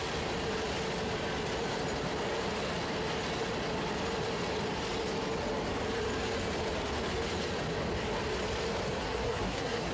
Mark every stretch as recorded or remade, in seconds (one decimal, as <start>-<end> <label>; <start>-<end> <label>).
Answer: 0.0-9.0 recorded; 9.0-9.9 remade